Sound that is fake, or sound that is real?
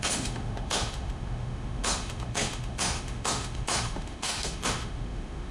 fake